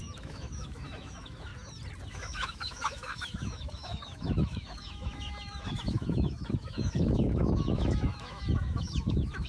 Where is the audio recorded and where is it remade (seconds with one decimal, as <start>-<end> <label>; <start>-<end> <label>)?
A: 0.0-1.5 remade; 1.5-2.1 recorded; 2.1-9.5 remade